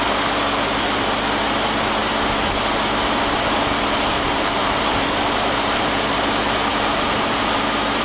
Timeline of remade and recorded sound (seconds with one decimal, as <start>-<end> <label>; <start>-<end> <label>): 0.0-4.1 recorded; 4.1-5.9 remade; 5.9-6.7 recorded; 6.7-7.6 remade; 7.6-8.0 recorded